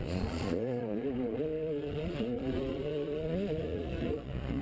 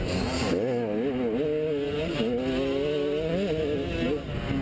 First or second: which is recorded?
second